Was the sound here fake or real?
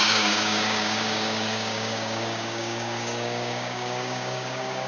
fake